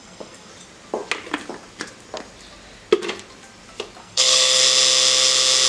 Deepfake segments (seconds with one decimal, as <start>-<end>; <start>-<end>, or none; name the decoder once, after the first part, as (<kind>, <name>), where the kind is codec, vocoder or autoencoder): 0.0-0.5 (codec, SNAC); 4.0-4.6